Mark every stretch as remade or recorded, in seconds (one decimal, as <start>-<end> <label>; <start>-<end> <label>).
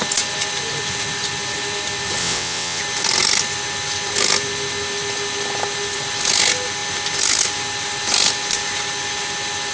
0.0-2.2 recorded; 2.2-2.8 remade; 2.8-9.7 recorded